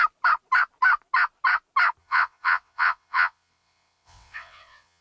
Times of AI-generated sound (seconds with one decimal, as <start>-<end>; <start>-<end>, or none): 2.0-5.0